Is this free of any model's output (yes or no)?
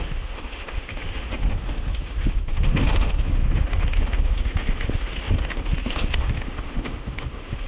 no